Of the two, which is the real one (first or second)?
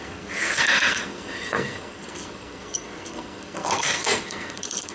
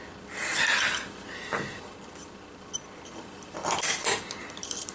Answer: second